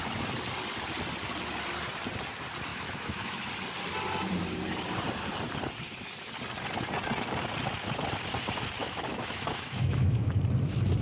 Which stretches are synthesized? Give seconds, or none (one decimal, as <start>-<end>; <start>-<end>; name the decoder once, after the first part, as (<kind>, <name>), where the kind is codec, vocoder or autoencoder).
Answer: 2.7-3.4 (autoencoder, DAC-VAE); 8.8-10.3